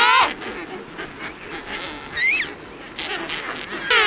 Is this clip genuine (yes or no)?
yes